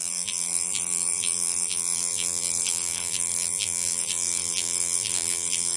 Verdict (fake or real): fake